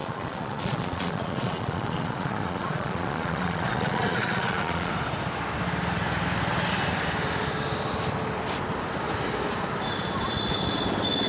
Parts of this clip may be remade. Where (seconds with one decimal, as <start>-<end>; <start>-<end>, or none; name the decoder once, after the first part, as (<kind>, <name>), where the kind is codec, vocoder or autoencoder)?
0.0-4.9 (vocoder, Vocos)